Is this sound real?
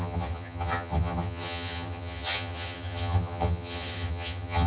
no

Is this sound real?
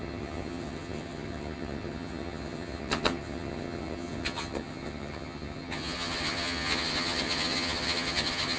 no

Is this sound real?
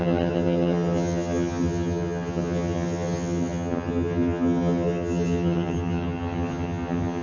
no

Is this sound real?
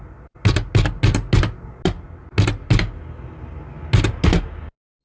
yes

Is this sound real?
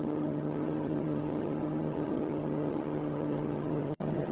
no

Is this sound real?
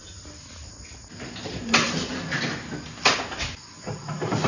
yes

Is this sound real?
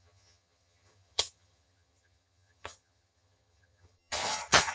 no